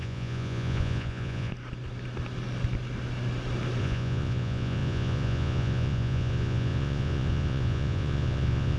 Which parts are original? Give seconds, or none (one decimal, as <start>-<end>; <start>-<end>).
1.5-3.8